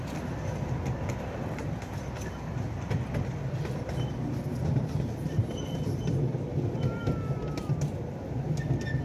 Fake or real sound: real